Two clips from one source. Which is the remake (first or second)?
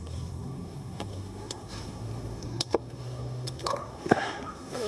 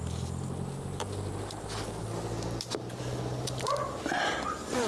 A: first